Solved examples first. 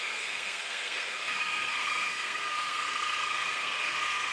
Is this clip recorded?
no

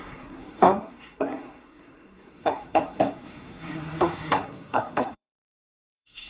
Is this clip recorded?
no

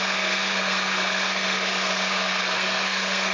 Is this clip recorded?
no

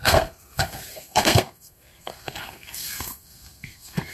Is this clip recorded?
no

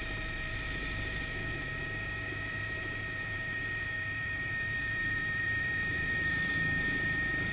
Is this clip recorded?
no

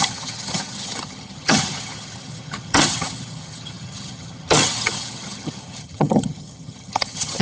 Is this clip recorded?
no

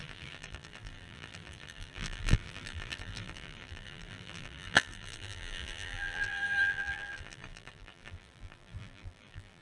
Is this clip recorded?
no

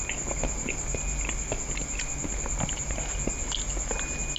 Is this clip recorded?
yes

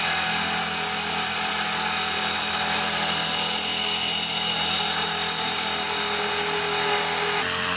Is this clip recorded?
yes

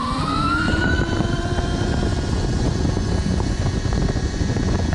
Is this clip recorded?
no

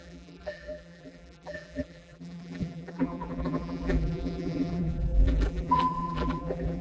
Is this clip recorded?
no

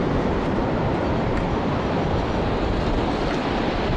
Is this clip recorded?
yes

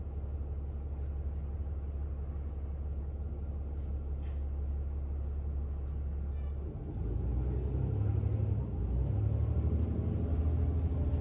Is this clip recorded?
yes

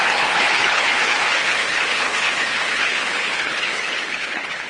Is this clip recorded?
no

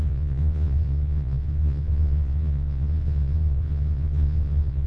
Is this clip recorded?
no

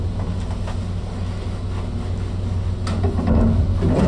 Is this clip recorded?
yes